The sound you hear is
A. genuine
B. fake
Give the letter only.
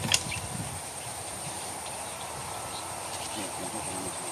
B